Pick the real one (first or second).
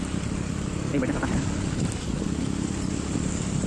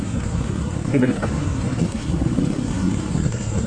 first